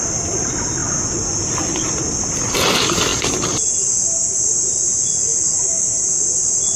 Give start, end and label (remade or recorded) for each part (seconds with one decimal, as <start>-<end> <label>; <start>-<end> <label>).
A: 0.0-6.8 recorded